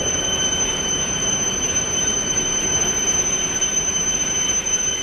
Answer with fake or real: fake